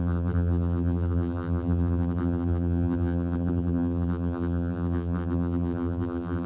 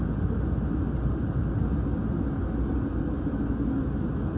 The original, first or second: second